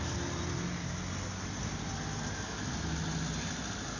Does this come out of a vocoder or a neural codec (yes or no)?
no